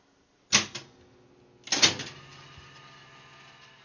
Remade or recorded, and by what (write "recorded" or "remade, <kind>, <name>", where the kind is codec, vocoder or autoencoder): recorded